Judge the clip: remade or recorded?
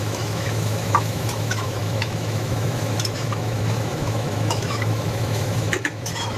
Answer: remade